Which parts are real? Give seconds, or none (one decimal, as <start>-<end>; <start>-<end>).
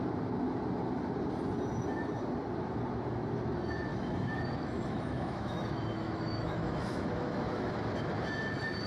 0.0-3.9; 7.9-8.9